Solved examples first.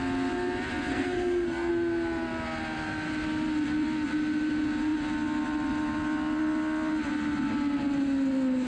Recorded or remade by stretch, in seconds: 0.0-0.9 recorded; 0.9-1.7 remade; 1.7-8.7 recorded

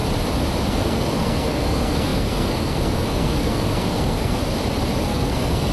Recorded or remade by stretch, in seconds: 0.0-0.7 recorded; 0.7-4.4 remade; 4.4-5.0 recorded; 5.0-5.7 remade

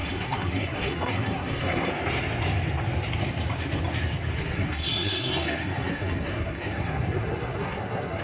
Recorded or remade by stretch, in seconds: 0.0-1.9 remade; 1.9-4.4 recorded; 4.4-8.2 remade

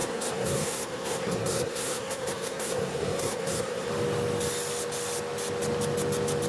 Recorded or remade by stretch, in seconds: 0.0-3.9 remade; 3.9-6.5 recorded

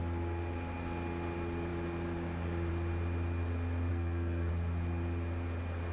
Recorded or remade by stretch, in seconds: 0.0-3.9 recorded; 3.9-4.5 remade; 4.5-5.9 recorded

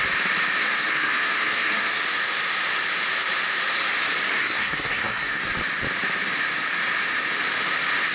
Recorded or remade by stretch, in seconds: 0.0-0.6 recorded; 0.6-2.0 remade; 2.0-4.4 recorded; 4.4-5.4 remade; 5.4-8.1 recorded